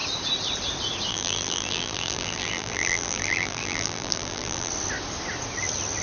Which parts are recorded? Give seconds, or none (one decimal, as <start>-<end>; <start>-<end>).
0.0-1.1; 4.7-6.0

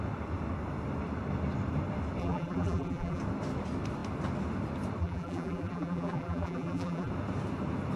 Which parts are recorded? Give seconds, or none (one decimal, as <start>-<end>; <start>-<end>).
0.0-2.2; 3.2-5.0; 7.1-8.0

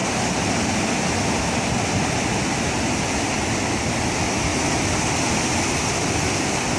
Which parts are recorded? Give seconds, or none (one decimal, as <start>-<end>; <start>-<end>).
none

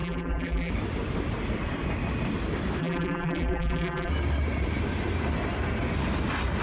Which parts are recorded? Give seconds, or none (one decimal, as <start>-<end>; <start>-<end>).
0.7-2.8; 4.1-6.6

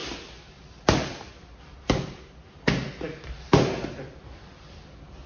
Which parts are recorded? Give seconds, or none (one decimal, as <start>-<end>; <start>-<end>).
0.0-0.5; 1.3-3.9